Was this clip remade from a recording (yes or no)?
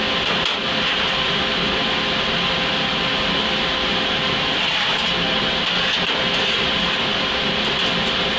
no